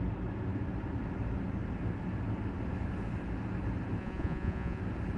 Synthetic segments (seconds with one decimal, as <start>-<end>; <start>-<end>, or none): 4.0-4.8